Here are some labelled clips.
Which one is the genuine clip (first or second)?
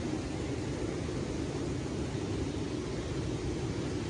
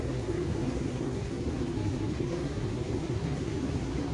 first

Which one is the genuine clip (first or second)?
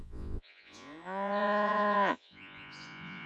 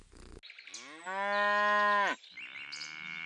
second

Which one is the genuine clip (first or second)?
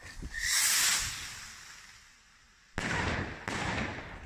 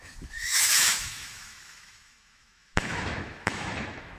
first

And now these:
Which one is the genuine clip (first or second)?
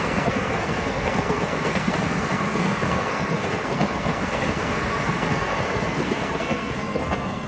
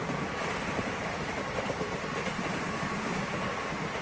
second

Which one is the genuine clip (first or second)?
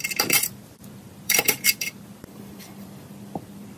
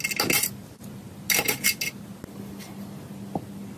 second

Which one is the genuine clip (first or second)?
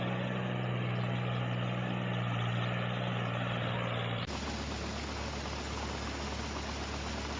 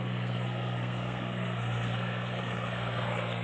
first